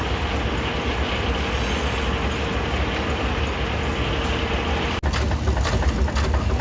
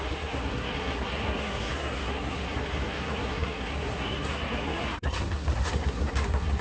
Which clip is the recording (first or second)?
first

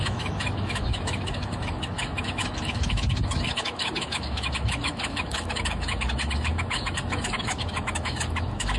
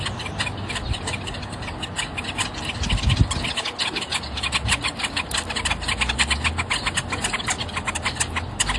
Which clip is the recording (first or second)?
second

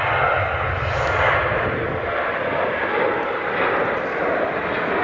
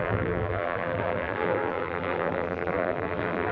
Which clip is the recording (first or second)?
first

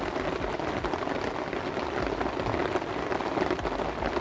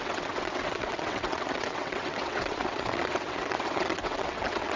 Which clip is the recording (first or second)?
first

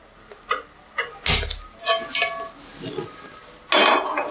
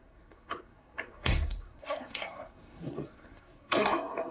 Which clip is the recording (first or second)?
first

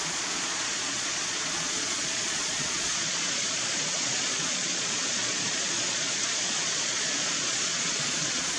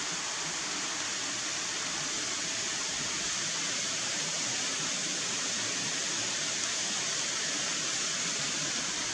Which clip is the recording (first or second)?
second